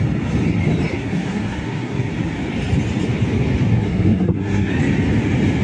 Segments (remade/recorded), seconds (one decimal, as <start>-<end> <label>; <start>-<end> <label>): 0.0-0.9 recorded; 0.9-2.1 remade; 2.1-3.7 recorded; 3.7-4.7 remade; 4.7-5.6 recorded